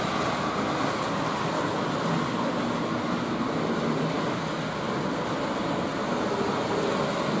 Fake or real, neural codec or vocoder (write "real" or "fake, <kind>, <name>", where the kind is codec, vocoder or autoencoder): real